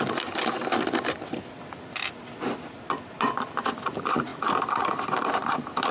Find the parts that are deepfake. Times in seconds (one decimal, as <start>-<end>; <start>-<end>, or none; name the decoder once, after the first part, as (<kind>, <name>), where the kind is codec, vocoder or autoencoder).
none